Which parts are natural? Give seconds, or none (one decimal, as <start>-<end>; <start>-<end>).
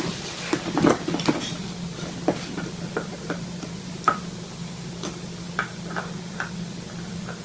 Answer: 0.0-3.1; 4.6-7.4